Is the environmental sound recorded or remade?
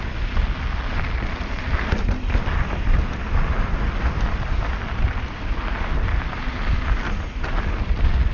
recorded